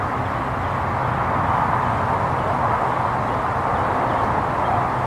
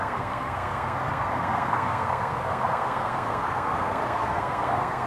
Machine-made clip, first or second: second